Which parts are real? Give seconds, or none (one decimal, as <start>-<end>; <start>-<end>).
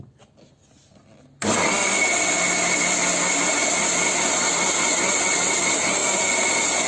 0.0-6.9